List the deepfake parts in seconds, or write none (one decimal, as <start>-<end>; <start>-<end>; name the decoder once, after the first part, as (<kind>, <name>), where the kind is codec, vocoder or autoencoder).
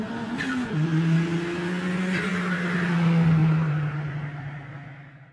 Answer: 3.4-4.6 (vocoder, BigVGAN v2)